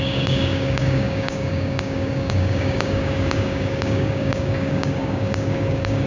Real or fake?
fake